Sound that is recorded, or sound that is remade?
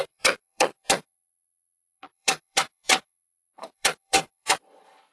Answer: remade